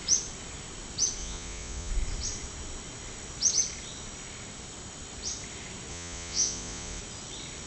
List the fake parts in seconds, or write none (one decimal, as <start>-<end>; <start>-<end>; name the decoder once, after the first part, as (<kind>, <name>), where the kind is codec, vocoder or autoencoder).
1.2-1.9 (vocoder, Vocos); 5.9-7.0